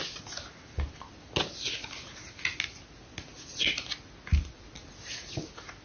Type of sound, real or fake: real